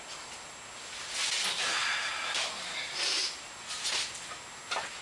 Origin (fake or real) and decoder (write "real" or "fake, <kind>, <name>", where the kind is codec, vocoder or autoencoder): real